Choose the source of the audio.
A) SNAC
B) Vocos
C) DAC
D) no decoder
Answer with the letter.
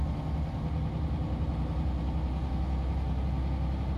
D